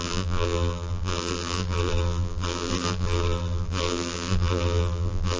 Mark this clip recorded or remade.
remade